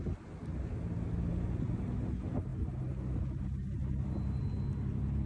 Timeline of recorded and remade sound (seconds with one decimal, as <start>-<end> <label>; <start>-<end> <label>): 0.0-5.3 recorded